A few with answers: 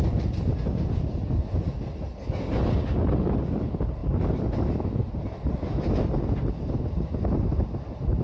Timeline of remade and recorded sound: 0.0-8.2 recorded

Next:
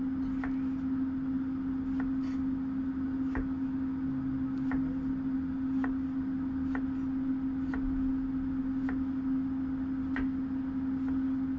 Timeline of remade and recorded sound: 0.0-11.6 recorded

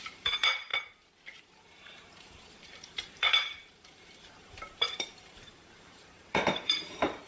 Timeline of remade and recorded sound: 0.0-0.7 remade; 0.7-1.4 recorded; 1.4-7.3 remade